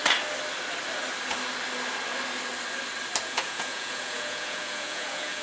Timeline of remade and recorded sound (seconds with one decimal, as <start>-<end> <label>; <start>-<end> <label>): 0.0-3.2 recorded; 3.2-5.4 remade